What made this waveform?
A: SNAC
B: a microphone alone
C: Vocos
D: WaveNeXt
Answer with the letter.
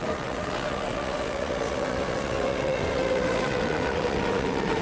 D